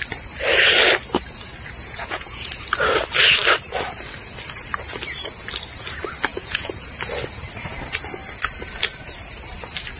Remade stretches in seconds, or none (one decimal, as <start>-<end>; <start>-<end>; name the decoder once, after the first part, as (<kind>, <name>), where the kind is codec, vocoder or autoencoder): 1.8-2.5 (vocoder, Vocos); 6.3-6.9